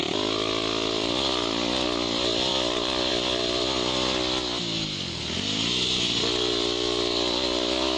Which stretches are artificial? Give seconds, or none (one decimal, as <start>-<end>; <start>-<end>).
none

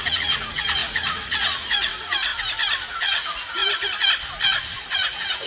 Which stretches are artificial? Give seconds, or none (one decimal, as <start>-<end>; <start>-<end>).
0.0-2.3; 2.9-3.6; 4.8-5.5

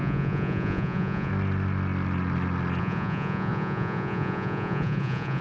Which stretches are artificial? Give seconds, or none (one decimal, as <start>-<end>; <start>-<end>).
0.0-1.3; 2.8-5.4

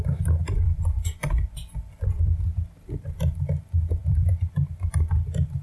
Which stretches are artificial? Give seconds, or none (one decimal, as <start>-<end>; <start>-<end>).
none

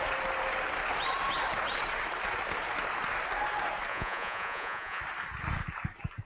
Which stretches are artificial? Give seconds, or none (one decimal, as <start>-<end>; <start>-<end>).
3.9-5.0

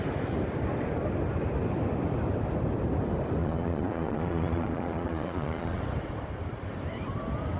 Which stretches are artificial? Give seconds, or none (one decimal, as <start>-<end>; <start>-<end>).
3.4-5.8

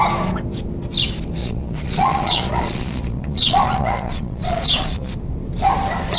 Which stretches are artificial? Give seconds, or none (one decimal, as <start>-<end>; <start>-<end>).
1.4-5.1